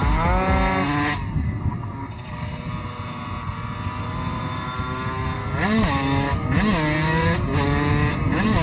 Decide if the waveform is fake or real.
real